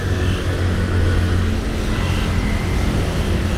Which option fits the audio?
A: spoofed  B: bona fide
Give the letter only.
B